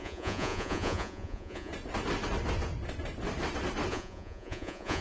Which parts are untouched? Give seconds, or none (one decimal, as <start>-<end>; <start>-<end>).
1.7-3.9